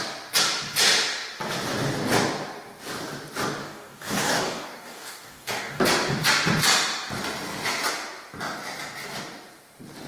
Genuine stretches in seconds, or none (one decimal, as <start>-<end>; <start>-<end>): 0.0-3.6; 5.8-10.1